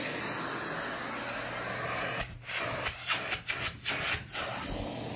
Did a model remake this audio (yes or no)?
no